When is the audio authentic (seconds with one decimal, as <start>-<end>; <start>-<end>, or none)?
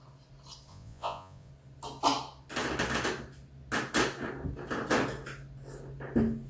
0.0-0.7; 1.5-6.5